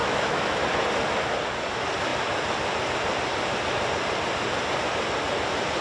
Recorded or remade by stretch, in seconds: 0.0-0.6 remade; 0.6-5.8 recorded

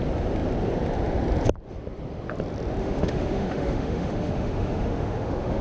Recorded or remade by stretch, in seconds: 0.0-2.8 recorded; 2.8-5.6 remade

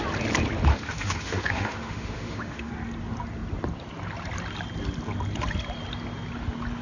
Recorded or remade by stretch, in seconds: 0.0-0.7 recorded; 0.7-2.7 remade; 2.7-6.8 recorded

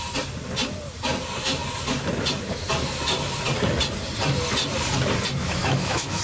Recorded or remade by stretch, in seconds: 0.0-5.4 recorded; 5.4-6.2 remade

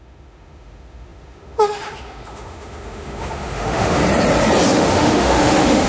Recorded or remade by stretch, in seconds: 0.0-4.0 remade; 4.0-4.7 recorded; 4.7-5.9 remade

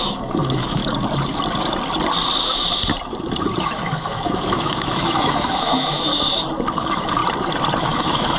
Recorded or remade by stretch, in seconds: 0.0-0.8 remade; 0.8-3.6 recorded; 3.6-6.1 remade; 6.1-6.7 recorded; 6.7-7.2 remade; 7.2-7.8 recorded; 7.8-8.4 remade

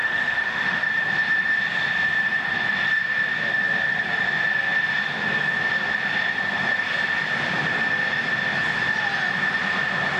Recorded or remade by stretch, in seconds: 0.0-0.8 remade; 0.8-10.2 recorded

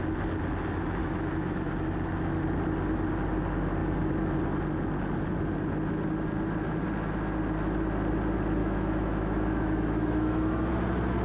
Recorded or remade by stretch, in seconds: 0.0-1.0 recorded; 1.0-1.7 remade; 1.7-8.6 recorded; 8.6-10.7 remade; 10.7-11.2 recorded